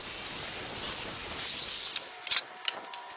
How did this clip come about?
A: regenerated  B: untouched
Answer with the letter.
B